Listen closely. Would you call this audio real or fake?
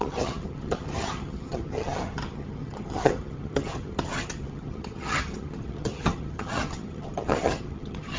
fake